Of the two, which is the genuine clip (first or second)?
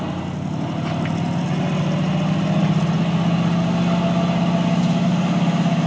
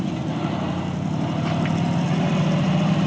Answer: first